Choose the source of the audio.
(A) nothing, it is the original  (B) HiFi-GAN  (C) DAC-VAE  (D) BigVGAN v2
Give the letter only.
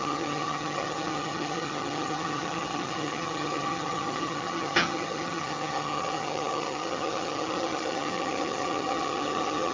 B